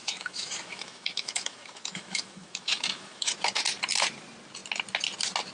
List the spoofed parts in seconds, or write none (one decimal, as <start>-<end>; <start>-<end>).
0.0-3.3